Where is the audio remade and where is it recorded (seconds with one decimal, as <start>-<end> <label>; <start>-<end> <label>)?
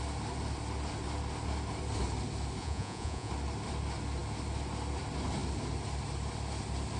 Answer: 0.0-2.6 recorded; 2.6-3.3 remade; 3.3-7.0 recorded